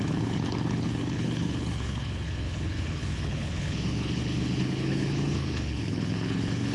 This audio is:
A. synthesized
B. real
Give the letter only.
A